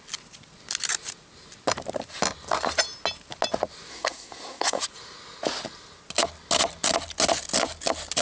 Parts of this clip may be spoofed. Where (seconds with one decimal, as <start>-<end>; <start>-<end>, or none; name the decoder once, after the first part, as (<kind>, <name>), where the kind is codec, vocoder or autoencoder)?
3.9-4.8 (codec, SNAC)